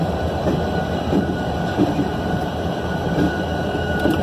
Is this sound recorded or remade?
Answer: remade